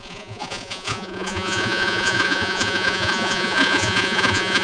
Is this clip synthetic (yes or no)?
yes